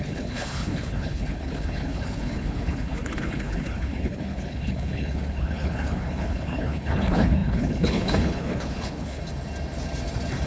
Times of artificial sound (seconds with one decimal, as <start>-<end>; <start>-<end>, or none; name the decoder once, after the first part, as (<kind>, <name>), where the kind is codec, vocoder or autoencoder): 0.0-9.2 (codec, HILCodec)